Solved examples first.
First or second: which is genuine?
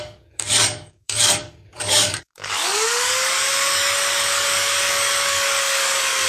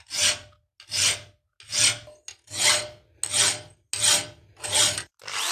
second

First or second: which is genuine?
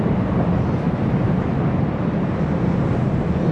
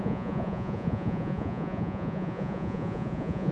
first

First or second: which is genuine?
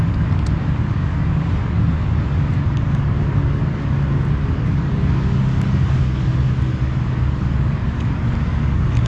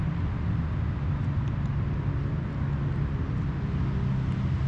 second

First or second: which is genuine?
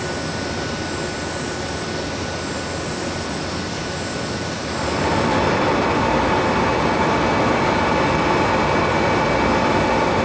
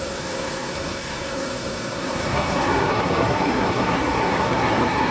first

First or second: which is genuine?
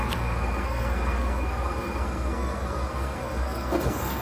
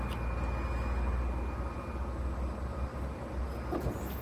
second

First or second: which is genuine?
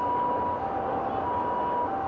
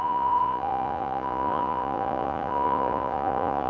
first